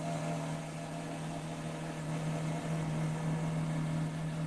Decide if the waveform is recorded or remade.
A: recorded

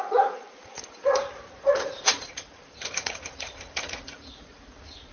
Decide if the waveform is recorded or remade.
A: remade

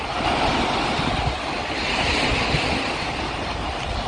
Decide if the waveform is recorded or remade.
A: recorded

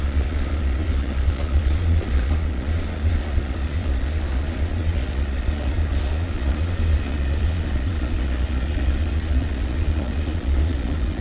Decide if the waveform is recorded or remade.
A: remade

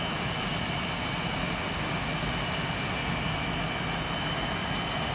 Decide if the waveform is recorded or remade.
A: recorded